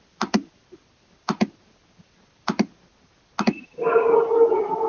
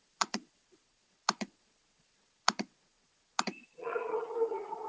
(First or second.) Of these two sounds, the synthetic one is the second